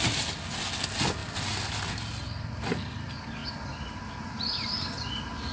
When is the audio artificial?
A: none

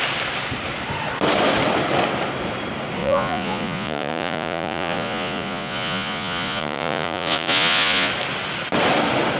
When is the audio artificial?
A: 3.0-8.1 (vocoder, Vocos)

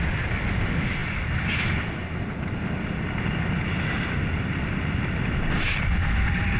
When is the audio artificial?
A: none

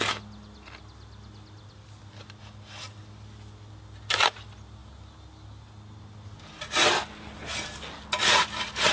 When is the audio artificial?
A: none

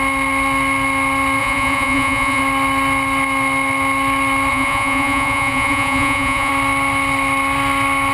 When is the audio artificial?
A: 1.4-2.4 (vocoder, Vocos); 4.5-6.5